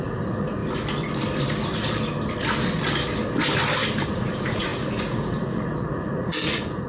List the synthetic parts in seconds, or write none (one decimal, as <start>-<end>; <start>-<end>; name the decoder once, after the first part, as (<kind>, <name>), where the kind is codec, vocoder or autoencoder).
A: 0.0-0.6 (vocoder, Vocos); 4.1-6.9